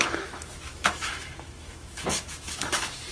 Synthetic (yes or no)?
yes